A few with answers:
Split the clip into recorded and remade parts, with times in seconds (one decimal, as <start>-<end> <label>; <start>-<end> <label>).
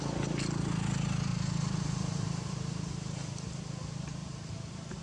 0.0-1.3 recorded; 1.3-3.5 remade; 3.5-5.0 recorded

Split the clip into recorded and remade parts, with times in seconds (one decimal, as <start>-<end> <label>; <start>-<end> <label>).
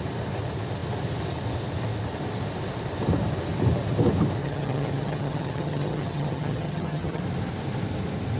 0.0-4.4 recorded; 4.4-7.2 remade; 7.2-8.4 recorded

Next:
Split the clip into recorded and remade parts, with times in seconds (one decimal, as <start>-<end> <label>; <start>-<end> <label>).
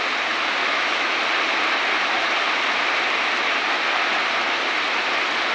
0.0-0.6 recorded; 0.6-1.2 remade; 1.2-5.5 recorded